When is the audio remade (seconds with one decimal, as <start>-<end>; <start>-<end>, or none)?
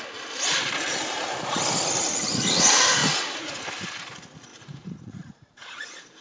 3.0-3.6; 4.5-6.2